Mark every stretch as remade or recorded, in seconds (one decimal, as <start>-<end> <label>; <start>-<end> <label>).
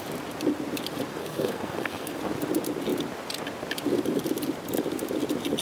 0.0-1.1 recorded; 1.1-2.2 remade; 2.2-5.6 recorded